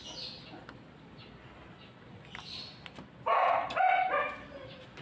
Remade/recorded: recorded